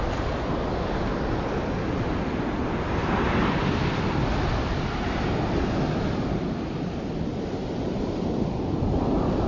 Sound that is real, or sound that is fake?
real